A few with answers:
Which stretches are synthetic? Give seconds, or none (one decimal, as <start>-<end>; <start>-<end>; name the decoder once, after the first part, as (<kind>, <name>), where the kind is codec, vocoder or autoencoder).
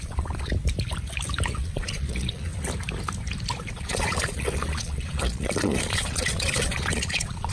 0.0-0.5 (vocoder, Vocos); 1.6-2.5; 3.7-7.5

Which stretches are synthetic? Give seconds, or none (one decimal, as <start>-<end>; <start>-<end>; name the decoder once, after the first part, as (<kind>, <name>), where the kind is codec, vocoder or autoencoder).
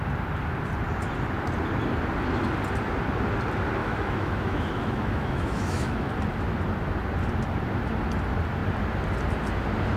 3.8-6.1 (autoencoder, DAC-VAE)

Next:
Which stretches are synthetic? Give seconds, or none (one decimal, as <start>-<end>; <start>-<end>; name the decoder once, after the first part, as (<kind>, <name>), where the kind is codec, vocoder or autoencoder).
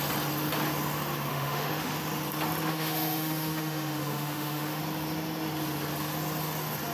1.3-1.9 (autoencoder, DAC-VAE); 2.7-4.8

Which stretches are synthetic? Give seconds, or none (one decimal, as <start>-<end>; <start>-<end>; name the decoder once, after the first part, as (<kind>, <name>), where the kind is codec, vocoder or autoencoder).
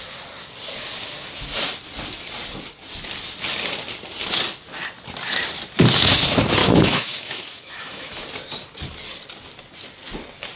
6.6-8.2 (autoencoder, DAC-VAE)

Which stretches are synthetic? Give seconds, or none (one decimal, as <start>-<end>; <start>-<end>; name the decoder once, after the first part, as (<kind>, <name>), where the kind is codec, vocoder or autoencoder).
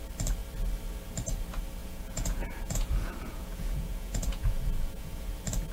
1.8-5.2 (vocoder, Vocos)